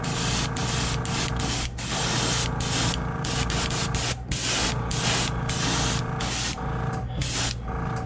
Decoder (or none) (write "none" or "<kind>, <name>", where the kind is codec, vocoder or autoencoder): none